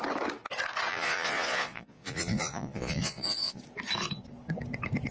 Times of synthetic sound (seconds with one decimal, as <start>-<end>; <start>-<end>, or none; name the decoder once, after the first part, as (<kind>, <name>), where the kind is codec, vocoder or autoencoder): 0.9-3.6 (vocoder, Vocos)

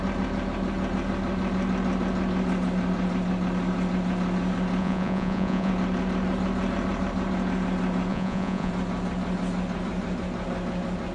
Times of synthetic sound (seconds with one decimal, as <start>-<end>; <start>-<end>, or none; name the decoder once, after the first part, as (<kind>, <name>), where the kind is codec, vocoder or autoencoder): 4.8-5.7 (vocoder, Vocos); 8.1-8.7

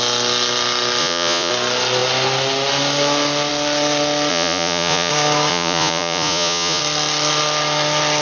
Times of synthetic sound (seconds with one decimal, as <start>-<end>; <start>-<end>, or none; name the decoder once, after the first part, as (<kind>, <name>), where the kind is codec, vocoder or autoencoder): 1.0-1.5 (vocoder, Vocos); 4.3-5.1; 5.5-6.8

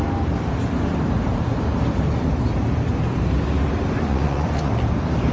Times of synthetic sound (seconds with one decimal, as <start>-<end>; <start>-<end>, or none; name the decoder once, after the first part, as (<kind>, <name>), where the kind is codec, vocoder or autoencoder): 4.1-4.7 (vocoder, Vocos)

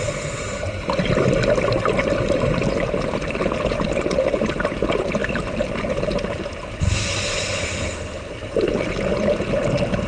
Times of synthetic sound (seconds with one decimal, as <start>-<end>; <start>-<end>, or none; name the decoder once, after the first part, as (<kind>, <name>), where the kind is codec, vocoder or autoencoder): none

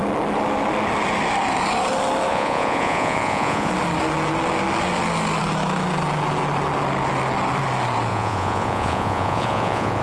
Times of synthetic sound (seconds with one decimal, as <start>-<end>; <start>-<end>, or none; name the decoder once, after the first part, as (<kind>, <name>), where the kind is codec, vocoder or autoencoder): 2.3-3.7 (vocoder, Vocos); 8.1-10.0